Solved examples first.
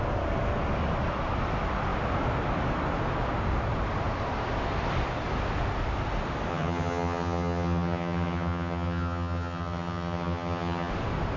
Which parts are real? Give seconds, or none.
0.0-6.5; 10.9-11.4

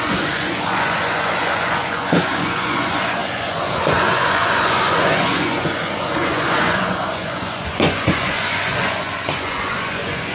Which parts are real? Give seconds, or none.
none